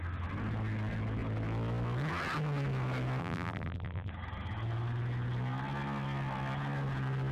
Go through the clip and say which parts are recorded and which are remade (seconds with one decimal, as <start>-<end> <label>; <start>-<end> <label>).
0.0-3.2 recorded; 3.2-4.1 remade; 4.1-7.3 recorded